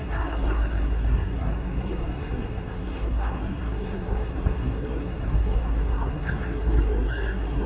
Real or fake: fake